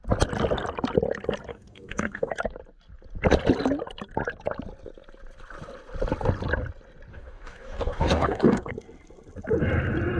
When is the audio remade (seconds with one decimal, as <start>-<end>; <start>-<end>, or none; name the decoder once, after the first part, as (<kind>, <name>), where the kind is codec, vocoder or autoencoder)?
1.5-2.3 (codec, DAC); 7.1-8.7